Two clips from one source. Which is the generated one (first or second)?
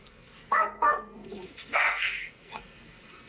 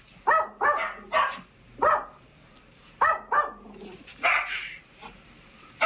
first